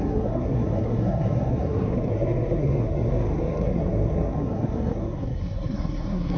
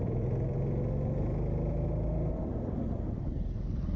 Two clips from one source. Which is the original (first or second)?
second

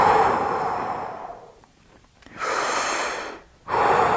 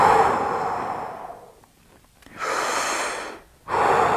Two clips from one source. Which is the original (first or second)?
second